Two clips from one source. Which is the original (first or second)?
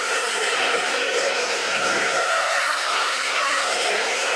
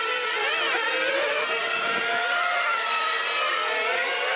second